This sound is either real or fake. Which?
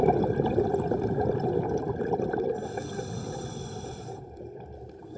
fake